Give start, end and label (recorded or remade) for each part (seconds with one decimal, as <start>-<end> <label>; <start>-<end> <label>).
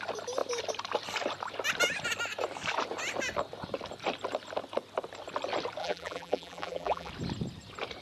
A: 0.0-5.8 recorded; 5.8-7.1 remade; 7.1-8.0 recorded